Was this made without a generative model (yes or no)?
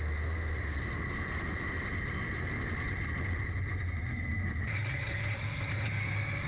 yes